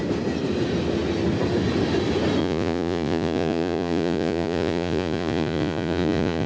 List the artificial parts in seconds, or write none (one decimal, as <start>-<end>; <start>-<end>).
2.4-6.5